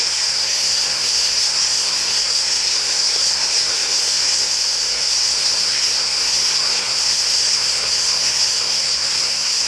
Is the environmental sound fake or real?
fake